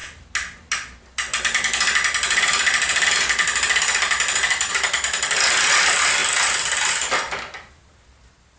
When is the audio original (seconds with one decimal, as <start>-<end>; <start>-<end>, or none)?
0.0-8.6